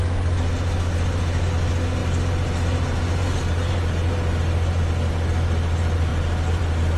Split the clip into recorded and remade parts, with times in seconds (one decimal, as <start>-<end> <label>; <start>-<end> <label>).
0.0-7.0 recorded